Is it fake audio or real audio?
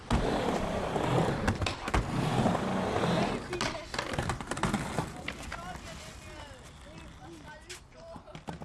real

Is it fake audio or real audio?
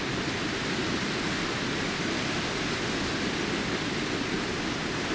real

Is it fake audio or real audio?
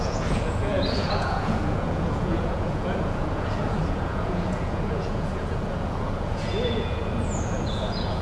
fake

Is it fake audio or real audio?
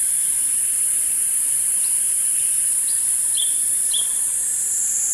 fake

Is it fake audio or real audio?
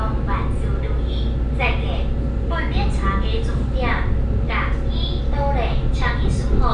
real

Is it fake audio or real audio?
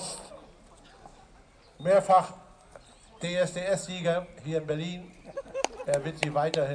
real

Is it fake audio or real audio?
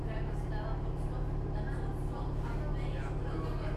fake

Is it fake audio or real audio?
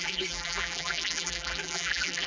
fake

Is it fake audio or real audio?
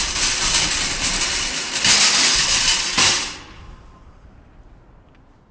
real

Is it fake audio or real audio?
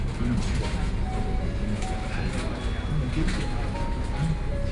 real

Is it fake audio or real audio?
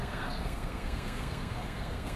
fake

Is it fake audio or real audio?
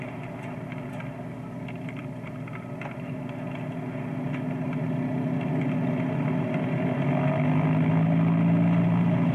real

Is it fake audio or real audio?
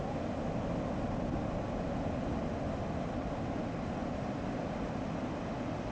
real